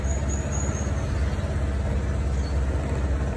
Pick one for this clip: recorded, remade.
recorded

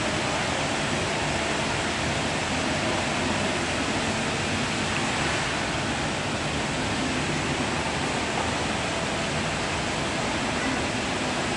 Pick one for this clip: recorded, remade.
recorded